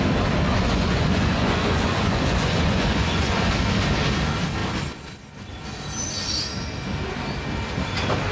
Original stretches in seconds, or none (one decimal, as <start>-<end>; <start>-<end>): 0.0-0.5; 3.5-8.3